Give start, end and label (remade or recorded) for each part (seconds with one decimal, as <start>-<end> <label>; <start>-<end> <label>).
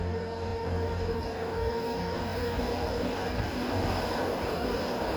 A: 0.0-5.2 remade